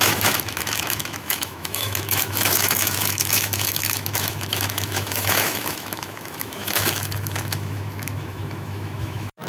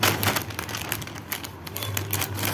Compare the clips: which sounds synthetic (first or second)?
first